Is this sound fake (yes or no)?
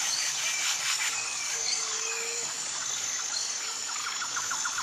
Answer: yes